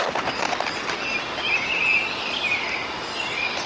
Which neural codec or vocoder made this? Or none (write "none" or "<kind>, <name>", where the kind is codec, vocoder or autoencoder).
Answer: none